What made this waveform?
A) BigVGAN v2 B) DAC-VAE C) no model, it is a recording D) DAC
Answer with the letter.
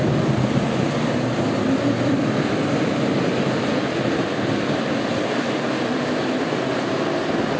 A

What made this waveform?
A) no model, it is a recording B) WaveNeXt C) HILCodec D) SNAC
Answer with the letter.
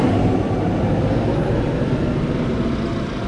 A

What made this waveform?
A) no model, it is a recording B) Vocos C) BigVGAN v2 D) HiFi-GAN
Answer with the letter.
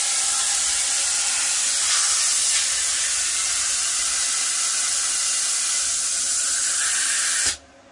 A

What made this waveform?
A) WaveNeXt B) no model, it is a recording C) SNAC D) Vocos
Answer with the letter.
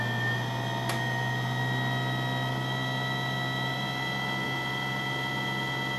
B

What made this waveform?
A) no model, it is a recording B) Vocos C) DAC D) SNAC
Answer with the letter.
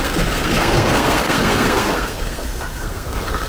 D